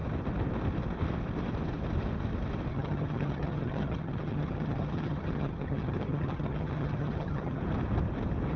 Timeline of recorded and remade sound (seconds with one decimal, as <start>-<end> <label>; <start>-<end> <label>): 0.0-2.7 recorded; 2.7-7.6 remade; 7.6-8.6 recorded